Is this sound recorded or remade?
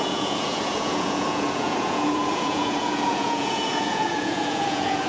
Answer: remade